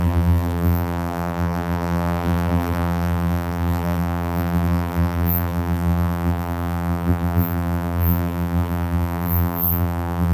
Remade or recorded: remade